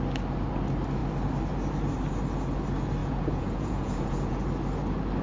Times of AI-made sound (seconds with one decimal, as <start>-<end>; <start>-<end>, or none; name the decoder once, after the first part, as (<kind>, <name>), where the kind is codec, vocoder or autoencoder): 3.0-4.4 (vocoder, Vocos)